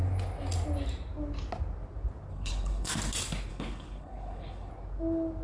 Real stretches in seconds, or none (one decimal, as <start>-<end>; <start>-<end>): 0.0-2.3; 2.9-3.5; 4.7-5.4